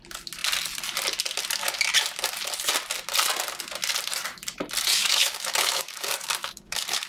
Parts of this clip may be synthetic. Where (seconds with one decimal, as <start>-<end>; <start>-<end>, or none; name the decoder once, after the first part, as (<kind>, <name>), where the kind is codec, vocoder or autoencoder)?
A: 4.9-7.1 (codec, DAC)